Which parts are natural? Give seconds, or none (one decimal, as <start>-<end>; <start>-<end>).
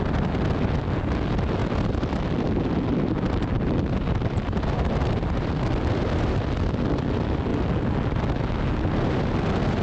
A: 0.0-9.8